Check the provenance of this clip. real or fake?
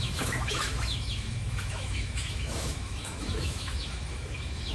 fake